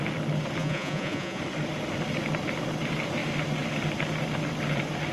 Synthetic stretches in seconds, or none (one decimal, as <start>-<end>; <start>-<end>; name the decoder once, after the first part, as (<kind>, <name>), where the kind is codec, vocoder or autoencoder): 0.6-1.4 (vocoder, Vocos)